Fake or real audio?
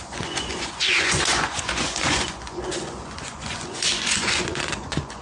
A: fake